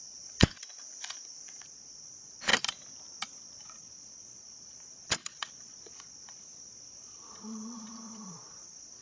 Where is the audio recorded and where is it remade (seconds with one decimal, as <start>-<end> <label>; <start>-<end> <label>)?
0.0-2.5 remade; 2.5-3.4 recorded; 3.4-9.0 remade